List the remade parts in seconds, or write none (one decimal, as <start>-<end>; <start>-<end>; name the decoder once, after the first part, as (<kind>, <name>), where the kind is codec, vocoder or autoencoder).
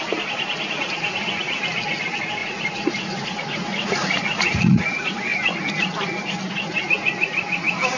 2.4-4.8 (vocoder, Vocos)